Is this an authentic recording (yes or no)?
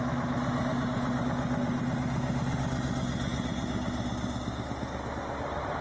yes